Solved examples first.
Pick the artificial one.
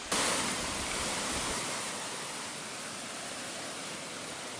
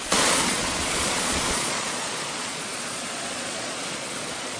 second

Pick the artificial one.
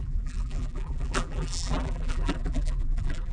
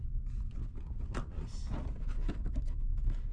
first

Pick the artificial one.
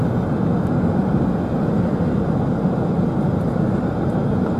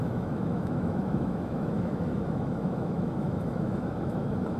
second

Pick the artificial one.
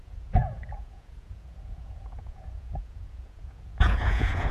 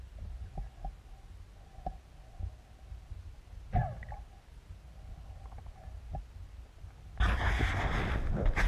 first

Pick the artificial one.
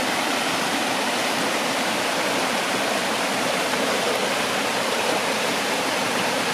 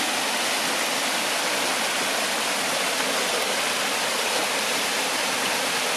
first